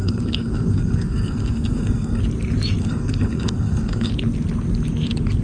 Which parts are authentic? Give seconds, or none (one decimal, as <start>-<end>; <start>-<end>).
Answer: 2.2-2.8; 4.1-5.4